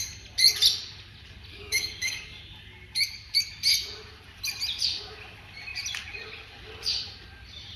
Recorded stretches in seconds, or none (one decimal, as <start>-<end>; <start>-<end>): 0.0-1.5; 2.4-7.8